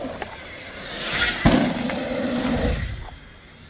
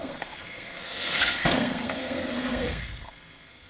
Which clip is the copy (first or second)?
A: second